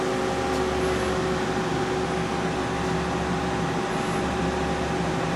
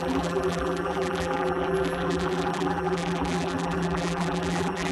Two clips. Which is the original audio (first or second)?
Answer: first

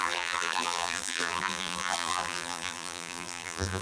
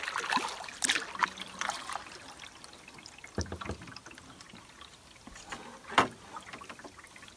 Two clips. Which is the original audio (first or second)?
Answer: second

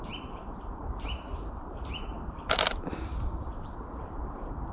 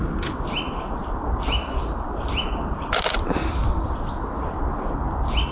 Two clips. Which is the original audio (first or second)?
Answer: second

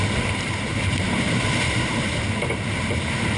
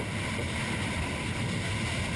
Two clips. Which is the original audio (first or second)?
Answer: second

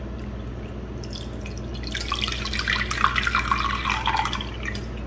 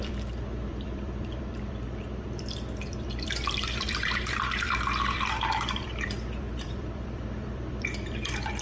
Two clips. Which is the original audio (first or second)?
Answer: first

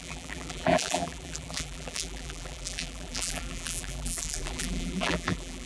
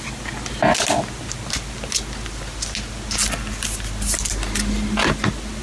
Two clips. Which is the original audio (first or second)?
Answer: second